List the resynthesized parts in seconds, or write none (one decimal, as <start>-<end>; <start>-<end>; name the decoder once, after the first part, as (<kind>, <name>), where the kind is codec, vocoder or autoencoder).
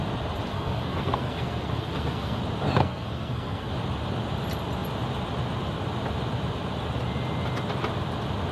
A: 0.5-2.4 (codec, SNAC); 2.8-3.7